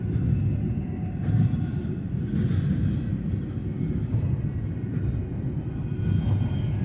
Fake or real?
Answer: real